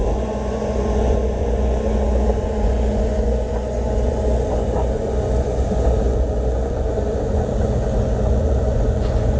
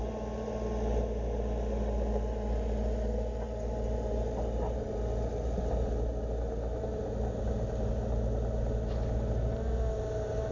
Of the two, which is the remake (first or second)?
first